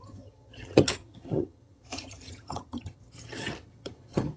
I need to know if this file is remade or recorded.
remade